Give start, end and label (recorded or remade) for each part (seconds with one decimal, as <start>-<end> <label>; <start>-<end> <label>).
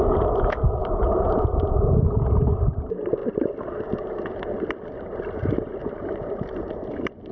0.0-0.8 recorded; 0.8-1.7 remade; 1.7-5.8 recorded; 5.8-6.7 remade; 6.7-7.3 recorded